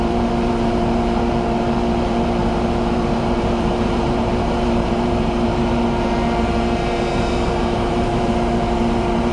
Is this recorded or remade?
remade